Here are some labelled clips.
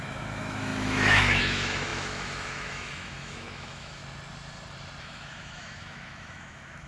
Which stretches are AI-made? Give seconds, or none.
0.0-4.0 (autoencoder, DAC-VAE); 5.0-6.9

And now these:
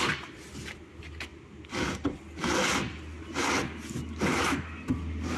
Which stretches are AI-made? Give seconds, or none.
none

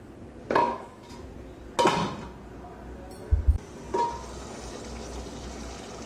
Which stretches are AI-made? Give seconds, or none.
0.6-1.1 (autoencoder, DAC-VAE)

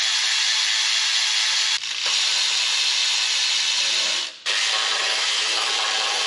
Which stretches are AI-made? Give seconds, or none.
5.0-5.7 (autoencoder, DAC-VAE)

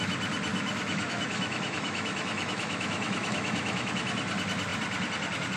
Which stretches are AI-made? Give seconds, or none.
0.5-3.9 (autoencoder, DAC-VAE)